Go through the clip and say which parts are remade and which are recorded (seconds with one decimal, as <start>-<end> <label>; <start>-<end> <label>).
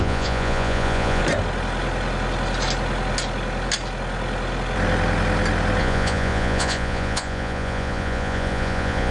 0.0-1.2 remade; 1.2-5.8 recorded; 5.8-9.1 remade